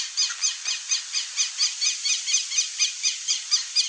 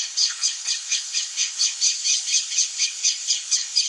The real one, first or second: first